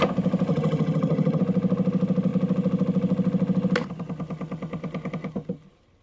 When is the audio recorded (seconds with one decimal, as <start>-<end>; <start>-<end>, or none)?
0.0-0.5; 1.4-6.0